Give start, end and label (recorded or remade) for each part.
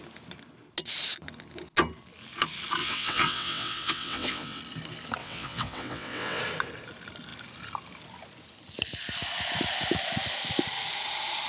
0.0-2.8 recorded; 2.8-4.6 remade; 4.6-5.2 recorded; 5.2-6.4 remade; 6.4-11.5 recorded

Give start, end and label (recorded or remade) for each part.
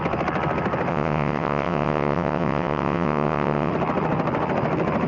0.0-0.9 recorded; 0.9-3.7 remade; 3.7-5.1 recorded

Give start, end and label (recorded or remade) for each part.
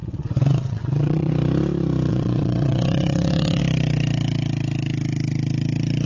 0.0-1.3 remade; 1.3-2.1 recorded; 2.1-3.6 remade; 3.6-6.1 recorded